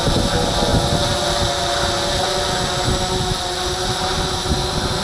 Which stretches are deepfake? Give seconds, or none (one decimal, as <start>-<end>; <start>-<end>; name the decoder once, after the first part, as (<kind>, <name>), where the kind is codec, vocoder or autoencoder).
none

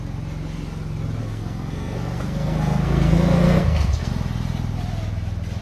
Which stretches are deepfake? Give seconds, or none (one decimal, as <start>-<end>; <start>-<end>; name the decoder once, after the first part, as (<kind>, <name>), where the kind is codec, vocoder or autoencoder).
1.2-4.1 (codec, SNAC)

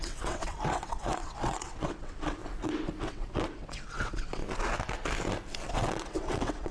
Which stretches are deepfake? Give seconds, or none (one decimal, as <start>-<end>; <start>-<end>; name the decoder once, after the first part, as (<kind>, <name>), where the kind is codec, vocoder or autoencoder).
0.0-2.4 (vocoder, WaveNeXt); 3.0-4.4; 5.7-6.7

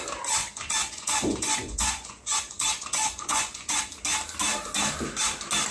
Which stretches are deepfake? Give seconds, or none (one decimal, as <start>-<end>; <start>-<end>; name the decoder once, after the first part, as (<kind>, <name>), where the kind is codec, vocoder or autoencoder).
0.4-3.8 (vocoder, Vocos)

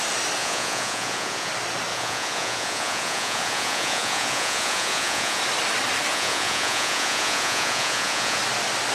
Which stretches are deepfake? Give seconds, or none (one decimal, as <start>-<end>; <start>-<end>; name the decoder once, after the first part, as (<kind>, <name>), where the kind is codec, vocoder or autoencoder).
0.4-1.5 (vocoder, Vocos); 1.9-5.4; 6.1-8.4

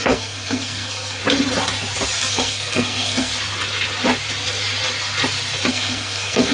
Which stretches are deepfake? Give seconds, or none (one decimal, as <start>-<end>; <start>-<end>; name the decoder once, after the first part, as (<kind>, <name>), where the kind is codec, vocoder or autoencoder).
0.0-1.2 (codec, SNAC); 2.2-3.3; 5.7-6.5

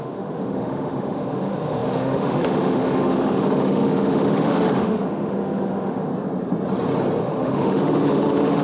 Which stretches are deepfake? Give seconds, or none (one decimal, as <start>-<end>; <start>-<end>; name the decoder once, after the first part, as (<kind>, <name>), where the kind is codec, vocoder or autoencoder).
0.0-6.1 (autoencoder, DAC-VAE); 7.2-8.6

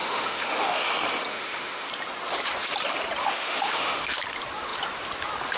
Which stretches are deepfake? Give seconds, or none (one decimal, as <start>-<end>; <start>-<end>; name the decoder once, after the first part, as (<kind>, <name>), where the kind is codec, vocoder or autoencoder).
0.0-0.8 (autoencoder, DAC-VAE); 1.3-1.9; 3.2-4.2